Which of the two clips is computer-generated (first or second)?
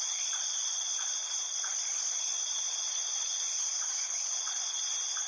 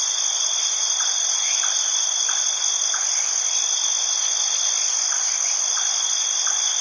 first